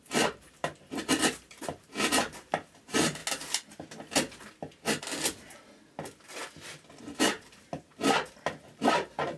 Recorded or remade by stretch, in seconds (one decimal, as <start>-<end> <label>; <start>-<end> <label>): 0.0-3.2 remade; 3.2-7.0 recorded; 7.0-7.9 remade; 7.9-8.5 recorded; 8.5-9.4 remade